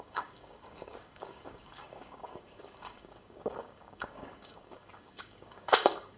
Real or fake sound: fake